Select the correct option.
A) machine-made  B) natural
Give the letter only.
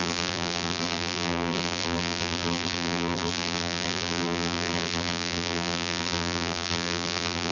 A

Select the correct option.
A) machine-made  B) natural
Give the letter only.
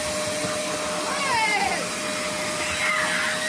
B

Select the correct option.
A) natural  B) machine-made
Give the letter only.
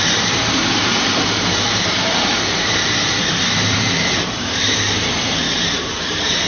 B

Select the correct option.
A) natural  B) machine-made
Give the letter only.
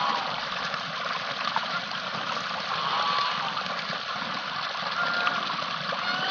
A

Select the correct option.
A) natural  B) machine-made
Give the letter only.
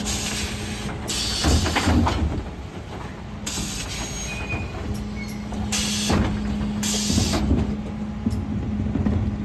A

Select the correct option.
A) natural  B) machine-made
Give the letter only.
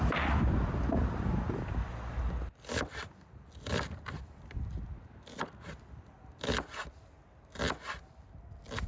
A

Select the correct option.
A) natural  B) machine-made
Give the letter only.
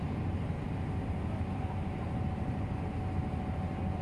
B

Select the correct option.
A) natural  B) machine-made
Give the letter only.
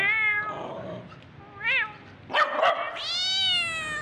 A